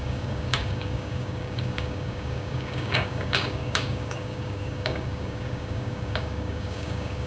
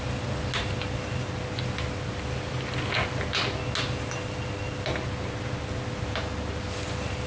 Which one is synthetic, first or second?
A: first